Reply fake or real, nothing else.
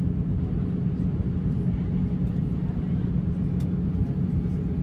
real